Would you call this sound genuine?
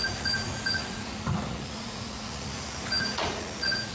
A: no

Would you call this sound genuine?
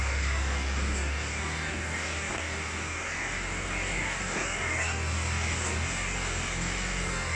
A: no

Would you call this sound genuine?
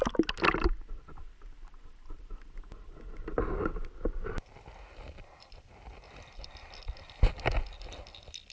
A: yes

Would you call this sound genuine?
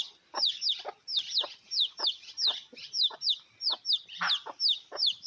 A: yes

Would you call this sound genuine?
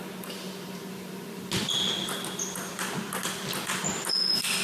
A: yes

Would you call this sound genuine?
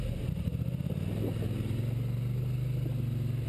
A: yes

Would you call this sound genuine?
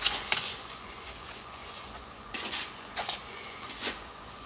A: no